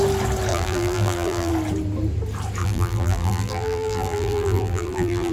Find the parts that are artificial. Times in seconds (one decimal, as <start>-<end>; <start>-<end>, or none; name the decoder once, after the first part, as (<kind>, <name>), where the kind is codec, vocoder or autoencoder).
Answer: 0.5-1.5 (vocoder, BigVGAN v2); 2.6-5.3